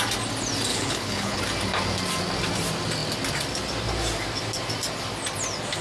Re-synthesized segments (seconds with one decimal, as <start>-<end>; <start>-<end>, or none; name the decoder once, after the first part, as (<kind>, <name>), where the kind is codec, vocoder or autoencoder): 0.7-1.4 (codec, HILCodec)